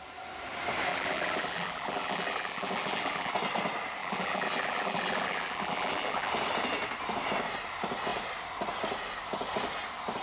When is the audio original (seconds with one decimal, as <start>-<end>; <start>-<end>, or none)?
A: 0.0-0.9; 3.3-4.0; 6.3-10.2

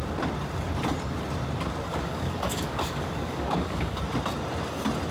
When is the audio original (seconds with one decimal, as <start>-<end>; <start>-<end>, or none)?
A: 0.0-1.9; 4.0-5.1

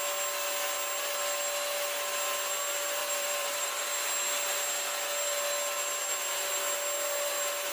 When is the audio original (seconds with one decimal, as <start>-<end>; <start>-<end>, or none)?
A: 0.0-3.0; 3.9-7.7

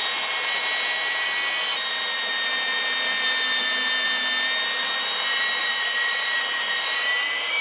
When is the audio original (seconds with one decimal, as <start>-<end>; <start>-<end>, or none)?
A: 0.0-5.6

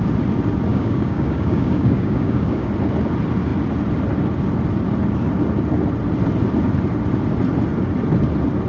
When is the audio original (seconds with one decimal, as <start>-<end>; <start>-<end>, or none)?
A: 0.0-0.7; 2.7-8.7

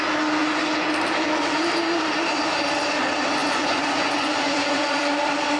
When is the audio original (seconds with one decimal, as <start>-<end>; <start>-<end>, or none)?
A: 0.0-3.4; 5.0-5.6

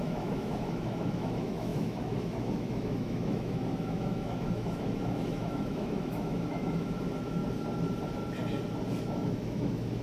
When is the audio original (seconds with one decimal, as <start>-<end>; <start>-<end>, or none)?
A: 7.4-9.0

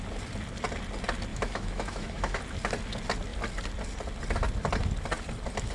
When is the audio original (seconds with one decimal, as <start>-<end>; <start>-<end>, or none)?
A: 0.0-1.3; 2.4-5.7